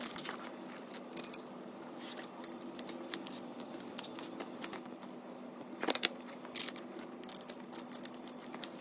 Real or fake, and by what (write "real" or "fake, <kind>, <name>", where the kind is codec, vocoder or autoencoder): real